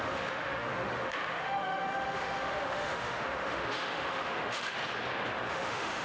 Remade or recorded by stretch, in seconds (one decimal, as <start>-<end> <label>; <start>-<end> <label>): 0.0-4.8 remade; 4.8-5.5 recorded; 5.5-6.0 remade